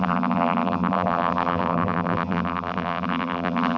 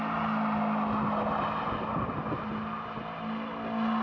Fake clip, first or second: first